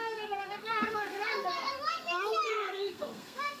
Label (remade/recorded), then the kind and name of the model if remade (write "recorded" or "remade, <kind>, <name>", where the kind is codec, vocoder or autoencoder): remade, codec, SNAC